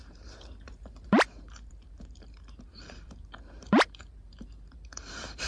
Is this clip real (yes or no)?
no